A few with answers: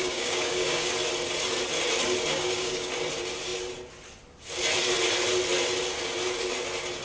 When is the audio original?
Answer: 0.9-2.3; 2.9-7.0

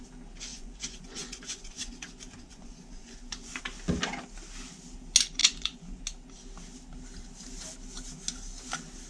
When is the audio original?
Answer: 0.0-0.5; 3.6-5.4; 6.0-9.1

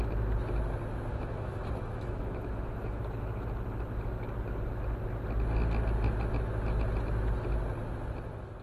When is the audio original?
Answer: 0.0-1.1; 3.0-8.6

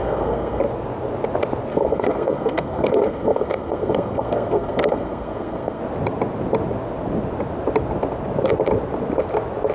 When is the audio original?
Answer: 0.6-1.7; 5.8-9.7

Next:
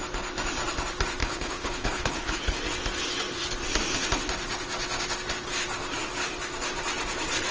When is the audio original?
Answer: 0.0-1.2; 2.6-7.5